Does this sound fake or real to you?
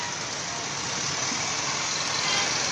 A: real